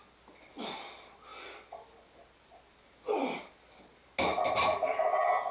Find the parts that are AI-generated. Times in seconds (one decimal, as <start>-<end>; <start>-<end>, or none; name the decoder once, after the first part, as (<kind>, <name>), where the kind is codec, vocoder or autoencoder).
none